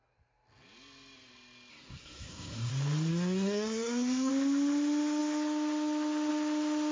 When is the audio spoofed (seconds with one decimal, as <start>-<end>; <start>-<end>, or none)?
1.7-2.7; 3.1-4.3